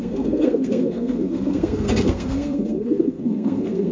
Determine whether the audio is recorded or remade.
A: remade